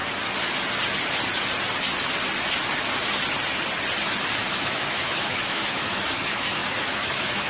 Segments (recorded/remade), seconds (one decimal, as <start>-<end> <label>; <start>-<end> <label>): 0.0-4.5 recorded; 4.5-7.5 remade